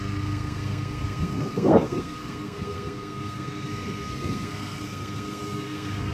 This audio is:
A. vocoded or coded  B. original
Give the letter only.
A